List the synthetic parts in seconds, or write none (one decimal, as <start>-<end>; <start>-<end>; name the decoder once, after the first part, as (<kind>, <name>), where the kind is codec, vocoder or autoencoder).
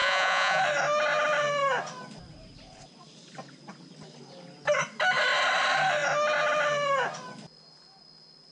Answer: 0.0-0.6 (vocoder, Vocos)